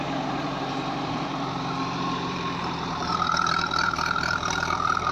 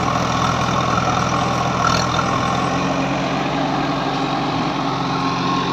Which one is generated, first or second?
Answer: first